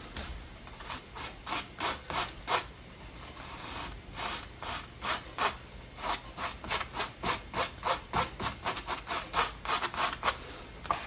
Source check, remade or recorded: recorded